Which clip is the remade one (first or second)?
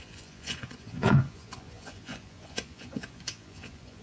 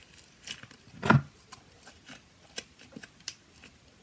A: first